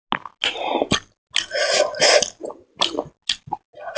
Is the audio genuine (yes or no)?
yes